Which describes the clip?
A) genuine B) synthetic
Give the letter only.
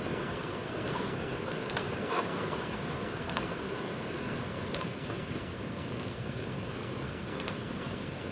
B